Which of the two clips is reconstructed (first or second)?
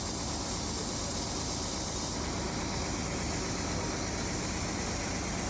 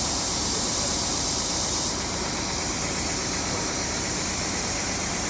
second